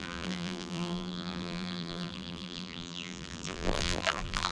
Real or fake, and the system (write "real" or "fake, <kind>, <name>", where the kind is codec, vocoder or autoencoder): fake, vocoder, BigVGAN v2